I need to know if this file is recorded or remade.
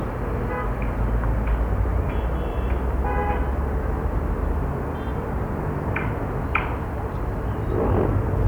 recorded